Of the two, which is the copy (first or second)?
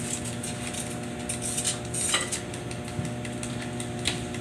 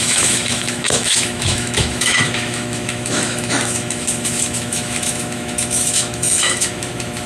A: second